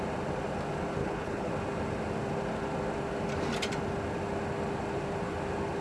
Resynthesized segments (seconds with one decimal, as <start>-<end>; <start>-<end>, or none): 1.0-1.5